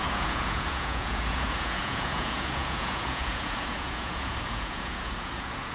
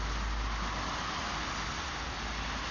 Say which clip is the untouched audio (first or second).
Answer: second